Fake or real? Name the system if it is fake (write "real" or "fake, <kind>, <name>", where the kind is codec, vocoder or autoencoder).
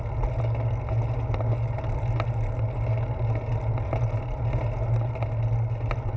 real